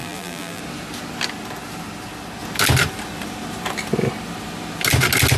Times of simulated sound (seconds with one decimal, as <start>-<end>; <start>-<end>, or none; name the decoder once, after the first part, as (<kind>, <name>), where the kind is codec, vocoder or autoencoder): 0.0-0.6 (vocoder, BigVGAN v2)